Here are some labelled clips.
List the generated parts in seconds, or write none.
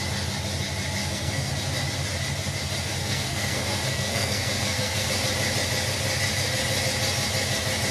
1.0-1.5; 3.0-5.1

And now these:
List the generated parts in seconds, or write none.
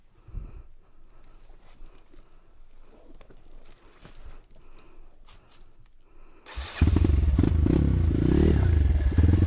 none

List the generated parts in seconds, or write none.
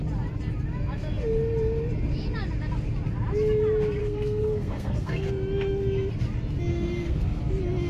4.0-5.3; 6.7-7.4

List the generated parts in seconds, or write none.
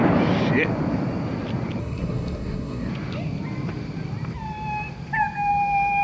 1.8-2.9